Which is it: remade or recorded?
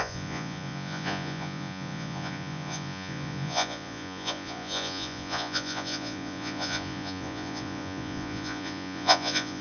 remade